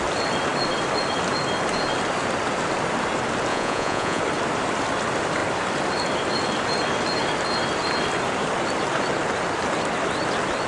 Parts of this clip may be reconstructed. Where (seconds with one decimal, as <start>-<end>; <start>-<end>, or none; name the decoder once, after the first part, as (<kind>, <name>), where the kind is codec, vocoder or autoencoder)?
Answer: 3.5-4.2 (vocoder, Vocos)